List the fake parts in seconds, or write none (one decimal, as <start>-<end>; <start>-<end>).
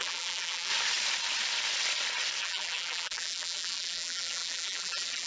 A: 0.0-0.7; 2.4-5.3